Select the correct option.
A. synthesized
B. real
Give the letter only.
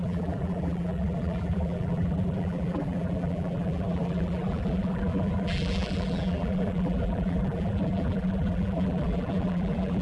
A